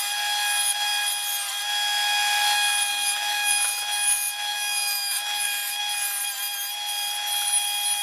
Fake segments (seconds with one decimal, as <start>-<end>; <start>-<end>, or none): 2.9-3.6; 4.5-5.8